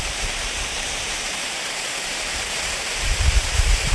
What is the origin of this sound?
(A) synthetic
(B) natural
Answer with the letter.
A